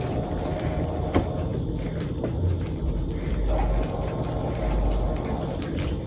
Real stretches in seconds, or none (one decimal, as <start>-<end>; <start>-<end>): 0.0-6.1